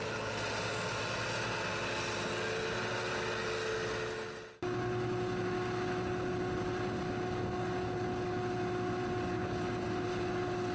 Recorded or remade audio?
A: recorded